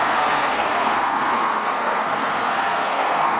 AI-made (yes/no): yes